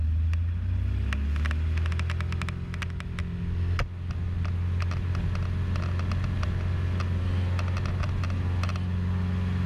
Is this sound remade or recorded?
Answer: recorded